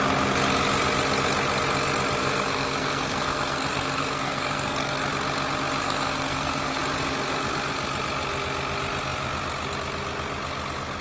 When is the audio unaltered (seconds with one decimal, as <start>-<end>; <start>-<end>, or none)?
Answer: 0.0-2.2; 5.1-5.8; 6.8-11.0